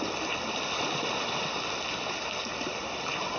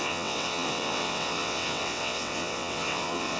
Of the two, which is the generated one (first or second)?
second